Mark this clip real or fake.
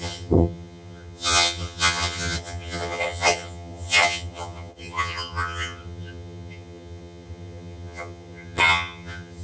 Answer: fake